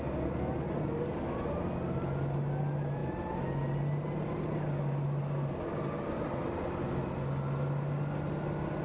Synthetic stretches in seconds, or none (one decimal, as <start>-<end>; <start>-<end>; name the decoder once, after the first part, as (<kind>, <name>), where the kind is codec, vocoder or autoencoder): none